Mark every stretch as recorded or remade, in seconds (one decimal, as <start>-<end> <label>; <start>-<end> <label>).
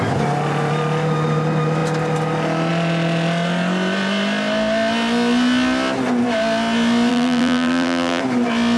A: 0.0-7.1 recorded; 7.1-8.2 remade; 8.2-8.8 recorded